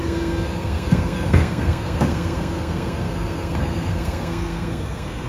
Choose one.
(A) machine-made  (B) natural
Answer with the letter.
A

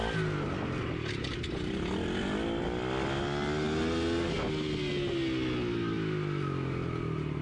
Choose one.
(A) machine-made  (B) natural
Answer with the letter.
B